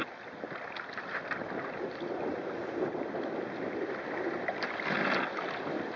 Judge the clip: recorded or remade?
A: recorded